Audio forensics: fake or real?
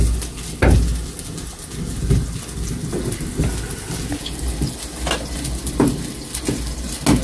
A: real